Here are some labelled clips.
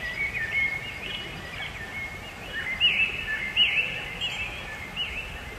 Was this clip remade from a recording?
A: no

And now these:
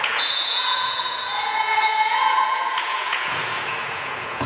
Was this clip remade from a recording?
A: yes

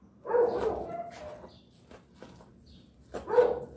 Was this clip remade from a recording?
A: no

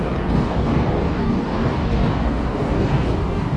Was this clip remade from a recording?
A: yes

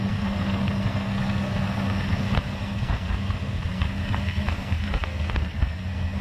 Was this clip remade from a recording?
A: yes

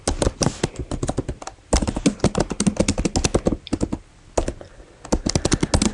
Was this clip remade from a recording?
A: no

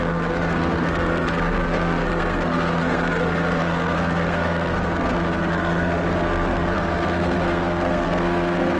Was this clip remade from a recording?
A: yes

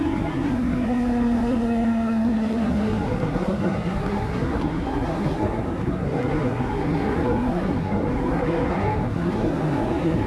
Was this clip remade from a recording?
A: yes